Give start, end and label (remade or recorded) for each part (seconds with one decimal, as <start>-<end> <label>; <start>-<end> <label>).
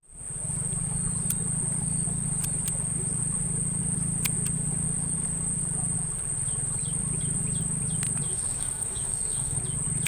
0.0-8.3 recorded; 8.3-9.6 remade; 9.6-10.1 recorded